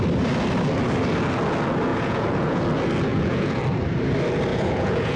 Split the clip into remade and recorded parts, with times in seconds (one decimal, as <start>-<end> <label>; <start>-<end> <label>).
0.0-1.9 recorded; 1.9-2.6 remade; 2.6-3.1 recorded; 3.1-3.6 remade; 3.6-4.5 recorded; 4.5-5.2 remade